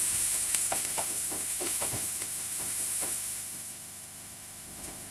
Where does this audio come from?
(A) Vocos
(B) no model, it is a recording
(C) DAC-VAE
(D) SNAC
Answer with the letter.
C